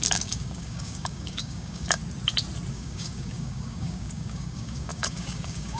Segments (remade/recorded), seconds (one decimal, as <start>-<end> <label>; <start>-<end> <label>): 0.0-2.0 remade; 2.0-2.7 recorded; 2.7-5.8 remade